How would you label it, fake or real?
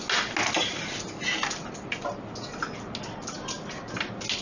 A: real